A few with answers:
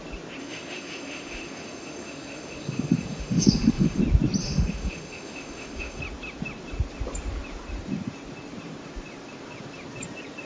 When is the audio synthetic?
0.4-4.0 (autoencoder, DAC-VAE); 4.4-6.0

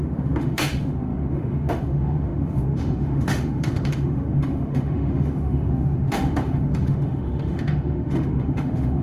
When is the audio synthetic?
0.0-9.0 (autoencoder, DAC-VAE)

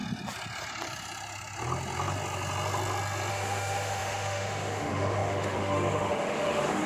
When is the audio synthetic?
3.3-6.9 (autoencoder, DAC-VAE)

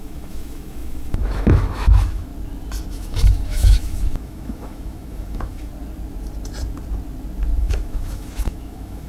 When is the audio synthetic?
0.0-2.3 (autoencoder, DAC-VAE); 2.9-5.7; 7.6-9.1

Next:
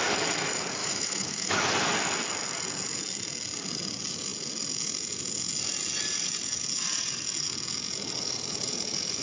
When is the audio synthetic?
0.8-1.6 (autoencoder, DAC-VAE)

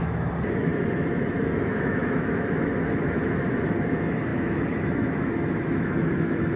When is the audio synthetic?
0.0-6.6 (autoencoder, DAC-VAE)

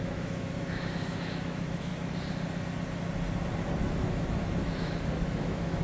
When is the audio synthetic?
0.0-1.9 (autoencoder, DAC-VAE); 3.8-5.8

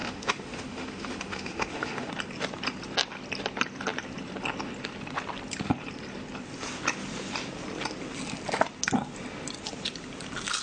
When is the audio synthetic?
0.0-2.1 (autoencoder, DAC-VAE)